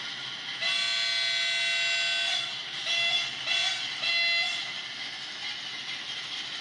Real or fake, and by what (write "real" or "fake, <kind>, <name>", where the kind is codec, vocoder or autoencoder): real